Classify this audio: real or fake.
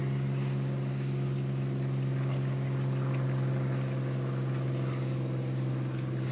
real